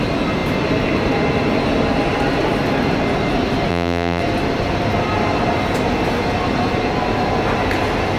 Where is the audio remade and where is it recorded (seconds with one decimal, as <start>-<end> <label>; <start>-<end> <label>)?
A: 0.0-3.7 recorded; 3.7-4.2 remade; 4.2-8.2 recorded